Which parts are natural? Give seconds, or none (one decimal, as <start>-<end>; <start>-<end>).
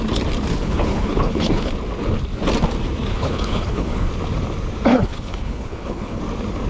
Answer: 0.0-0.6; 1.7-3.1; 4.1-4.9; 6.2-6.7